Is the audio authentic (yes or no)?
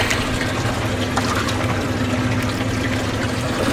no